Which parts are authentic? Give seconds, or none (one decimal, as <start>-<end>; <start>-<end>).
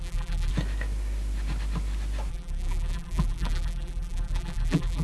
0.5-2.3